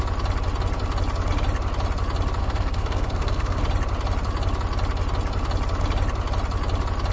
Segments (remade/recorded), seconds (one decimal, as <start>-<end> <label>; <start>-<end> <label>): 0.0-2.4 recorded; 2.4-3.6 remade; 3.6-7.1 recorded